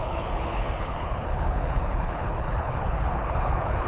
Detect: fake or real fake